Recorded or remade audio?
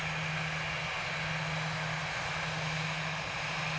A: recorded